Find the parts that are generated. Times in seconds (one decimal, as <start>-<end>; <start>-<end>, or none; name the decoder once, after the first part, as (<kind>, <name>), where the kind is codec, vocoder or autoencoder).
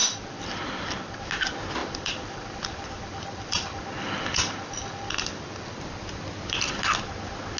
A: 0.0-1.2 (vocoder, BigVGAN v2); 1.8-5.8